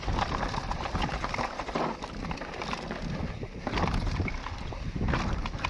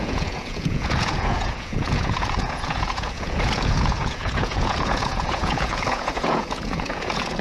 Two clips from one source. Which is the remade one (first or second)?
second